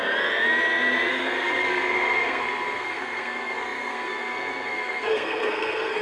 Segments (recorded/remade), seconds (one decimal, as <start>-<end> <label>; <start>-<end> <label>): 0.0-1.1 recorded; 1.1-6.0 remade